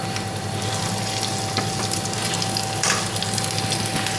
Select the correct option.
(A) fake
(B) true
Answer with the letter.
B